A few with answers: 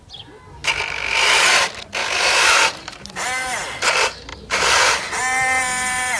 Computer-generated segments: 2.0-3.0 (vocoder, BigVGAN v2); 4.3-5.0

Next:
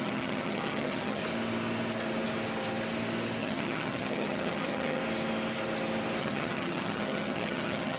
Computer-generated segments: 0.0-1.2 (vocoder, HiFi-GAN); 3.4-5.0; 6.2-8.0

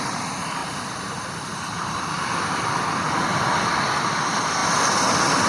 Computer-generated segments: 0.6-2.8 (vocoder, BigVGAN v2); 4.6-5.5

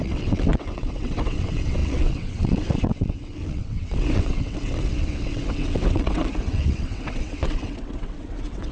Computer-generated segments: 0.0-8.7 (vocoder, WaveNeXt)